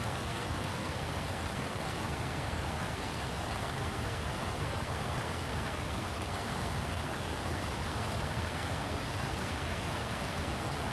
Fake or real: fake